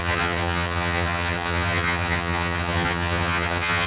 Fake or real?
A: fake